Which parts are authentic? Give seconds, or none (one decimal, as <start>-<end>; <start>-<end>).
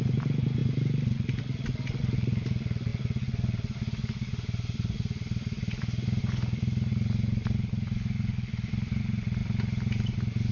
0.0-10.5